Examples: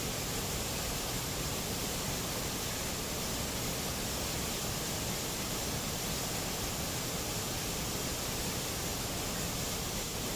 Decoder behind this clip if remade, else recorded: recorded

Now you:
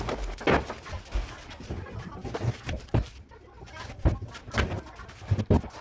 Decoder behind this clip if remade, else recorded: recorded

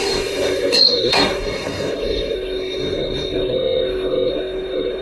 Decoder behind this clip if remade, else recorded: remade, codec, SNAC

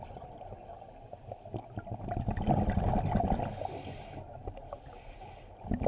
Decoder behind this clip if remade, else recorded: recorded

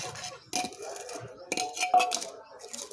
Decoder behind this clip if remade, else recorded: recorded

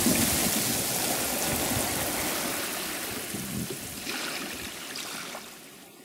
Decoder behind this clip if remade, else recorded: recorded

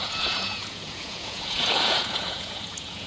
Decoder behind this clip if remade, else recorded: remade, vocoder, Vocos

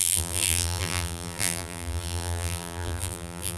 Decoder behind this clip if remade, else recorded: remade, vocoder, BigVGAN v2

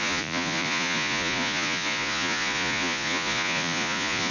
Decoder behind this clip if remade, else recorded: remade, vocoder, Vocos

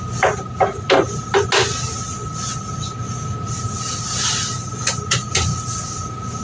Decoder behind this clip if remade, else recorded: recorded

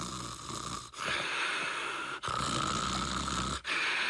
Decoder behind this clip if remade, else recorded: recorded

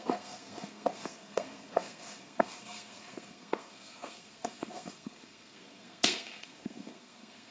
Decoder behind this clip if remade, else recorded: remade, codec, SNAC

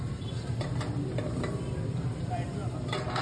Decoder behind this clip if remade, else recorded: remade, vocoder, BigVGAN v2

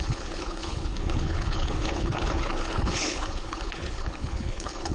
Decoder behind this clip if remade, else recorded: remade, codec, HILCodec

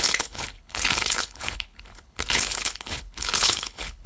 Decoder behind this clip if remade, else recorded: remade, codec, HILCodec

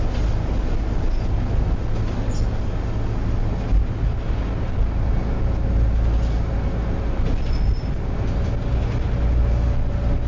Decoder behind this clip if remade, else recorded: recorded